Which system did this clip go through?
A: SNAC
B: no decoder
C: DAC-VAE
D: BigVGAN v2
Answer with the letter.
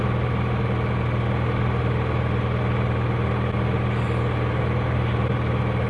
B